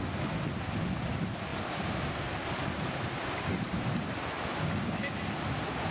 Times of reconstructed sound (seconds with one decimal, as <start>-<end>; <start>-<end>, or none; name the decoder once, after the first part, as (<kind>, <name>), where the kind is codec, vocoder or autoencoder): 1.5-4.2 (vocoder, BigVGAN v2)